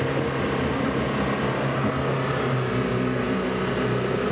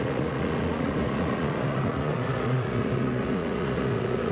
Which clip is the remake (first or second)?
second